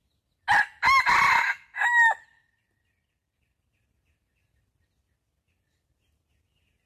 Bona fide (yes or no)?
yes